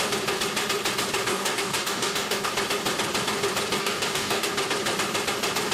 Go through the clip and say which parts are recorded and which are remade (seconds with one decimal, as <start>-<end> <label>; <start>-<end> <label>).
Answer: 0.0-1.3 recorded; 1.3-2.5 remade; 2.5-3.8 recorded; 3.8-4.5 remade; 4.5-5.7 recorded